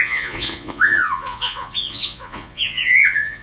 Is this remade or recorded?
remade